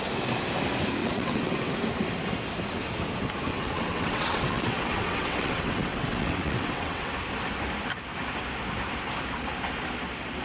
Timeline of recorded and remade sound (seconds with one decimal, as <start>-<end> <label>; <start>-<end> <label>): 0.0-1.0 recorded; 1.0-1.7 remade; 1.7-3.5 recorded; 3.5-7.1 remade; 7.1-10.4 recorded